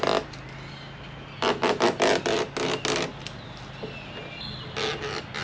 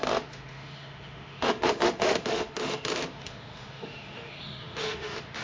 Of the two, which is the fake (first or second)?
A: second